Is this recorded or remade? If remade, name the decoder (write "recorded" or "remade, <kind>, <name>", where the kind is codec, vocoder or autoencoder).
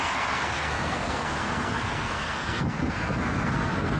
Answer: remade, codec, SNAC